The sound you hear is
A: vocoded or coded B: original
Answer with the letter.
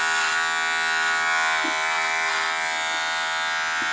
B